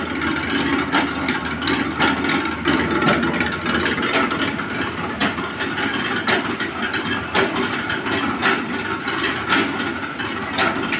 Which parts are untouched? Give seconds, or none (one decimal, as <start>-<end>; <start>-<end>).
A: 0.0-11.0

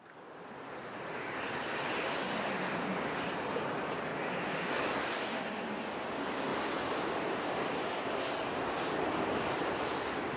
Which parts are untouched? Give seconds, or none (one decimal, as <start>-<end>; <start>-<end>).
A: 0.0-6.5; 8.2-10.4

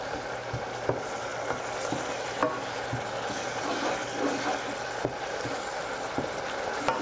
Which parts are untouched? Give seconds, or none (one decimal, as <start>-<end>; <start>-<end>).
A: 1.3-1.9; 2.4-6.6

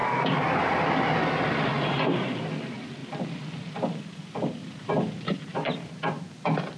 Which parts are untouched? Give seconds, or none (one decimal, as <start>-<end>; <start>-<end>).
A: 0.0-4.6; 6.2-6.8

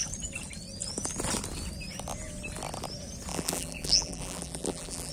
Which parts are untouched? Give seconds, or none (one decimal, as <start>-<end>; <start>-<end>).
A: 0.0-3.3

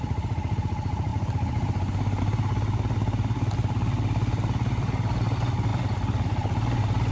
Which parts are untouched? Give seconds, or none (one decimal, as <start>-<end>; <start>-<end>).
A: 0.0-1.1; 2.2-5.7

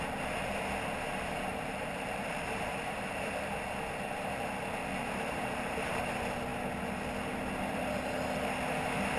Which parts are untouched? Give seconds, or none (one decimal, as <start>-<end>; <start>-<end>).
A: 0.0-1.5; 3.5-4.9; 5.9-9.2